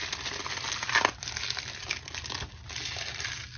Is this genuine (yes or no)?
yes